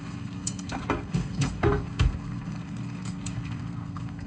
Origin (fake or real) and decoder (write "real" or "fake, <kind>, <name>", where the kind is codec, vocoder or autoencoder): fake, codec, SNAC